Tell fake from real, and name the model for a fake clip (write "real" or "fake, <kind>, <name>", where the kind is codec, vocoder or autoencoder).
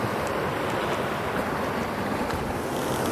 real